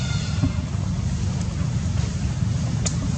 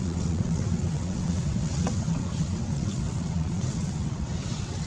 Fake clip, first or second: second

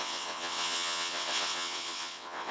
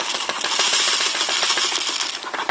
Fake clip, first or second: first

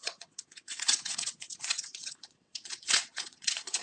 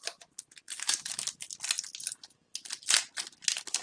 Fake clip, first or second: first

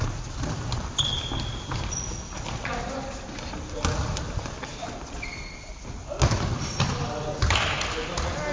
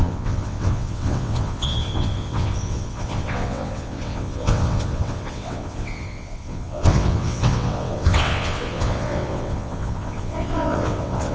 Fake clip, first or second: second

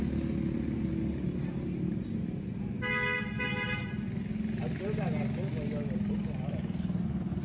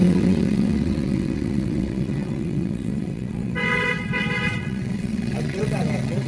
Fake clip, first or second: second